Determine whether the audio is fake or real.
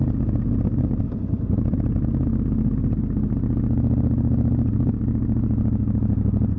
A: real